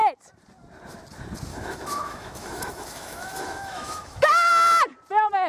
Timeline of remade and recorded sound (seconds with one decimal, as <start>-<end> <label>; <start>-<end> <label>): 0.0-1.5 recorded; 1.5-4.5 remade; 4.5-5.5 recorded